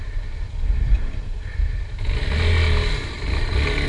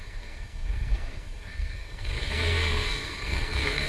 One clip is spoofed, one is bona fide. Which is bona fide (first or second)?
first